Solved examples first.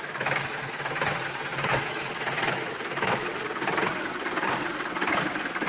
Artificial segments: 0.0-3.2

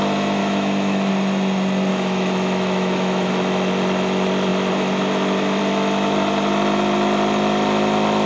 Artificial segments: 0.4-1.1; 1.9-3.3

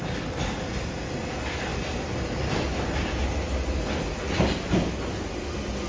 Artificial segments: none